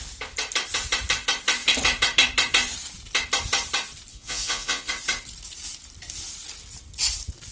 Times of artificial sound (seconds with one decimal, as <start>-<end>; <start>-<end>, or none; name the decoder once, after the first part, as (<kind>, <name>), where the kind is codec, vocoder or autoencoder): 4.1-4.9 (vocoder, Vocos)